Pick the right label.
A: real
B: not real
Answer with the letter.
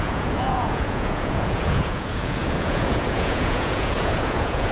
B